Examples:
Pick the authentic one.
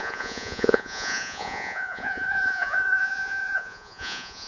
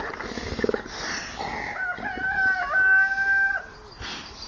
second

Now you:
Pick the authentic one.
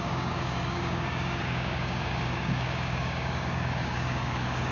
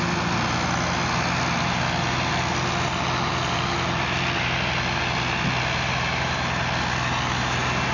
second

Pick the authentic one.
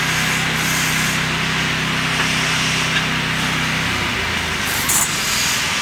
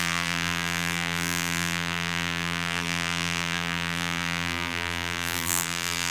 first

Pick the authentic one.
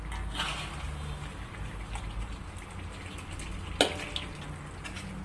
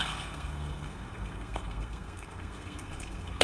first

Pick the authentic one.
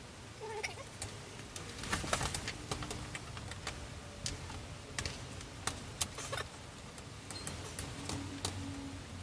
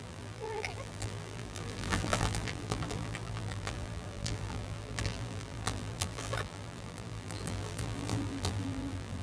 first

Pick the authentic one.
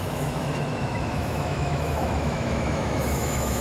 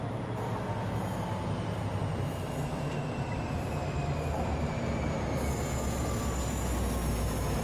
second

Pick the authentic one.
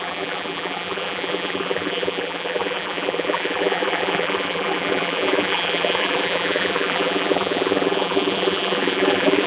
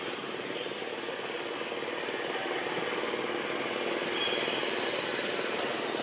second